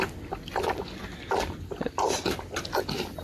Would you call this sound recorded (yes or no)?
yes